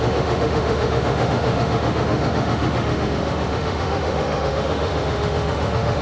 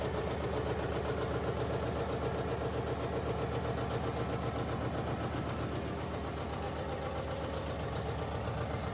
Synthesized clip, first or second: first